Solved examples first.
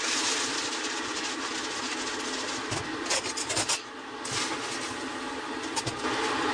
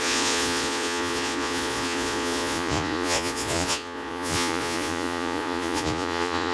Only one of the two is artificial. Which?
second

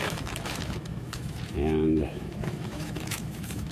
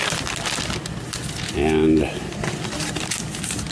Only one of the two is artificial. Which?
first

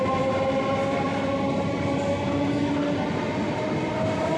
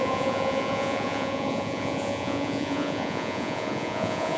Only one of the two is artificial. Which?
second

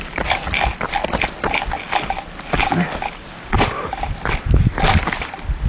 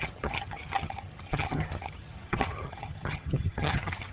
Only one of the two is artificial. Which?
second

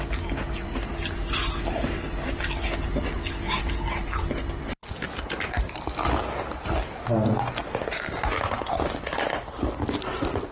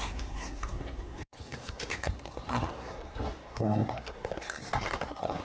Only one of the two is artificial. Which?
second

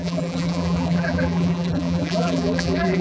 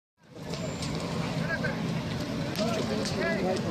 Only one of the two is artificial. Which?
first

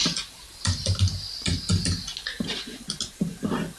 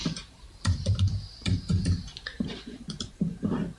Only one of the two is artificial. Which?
second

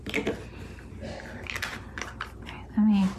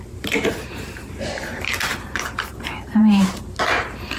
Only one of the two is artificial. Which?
second